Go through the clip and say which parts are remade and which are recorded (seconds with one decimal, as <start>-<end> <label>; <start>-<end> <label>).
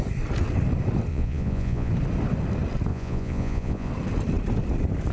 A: 0.0-1.1 recorded; 1.1-1.9 remade; 1.9-2.9 recorded; 2.9-3.9 remade; 3.9-5.1 recorded